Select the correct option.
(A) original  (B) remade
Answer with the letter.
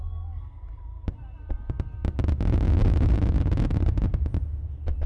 A